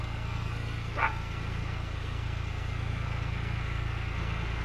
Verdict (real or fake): fake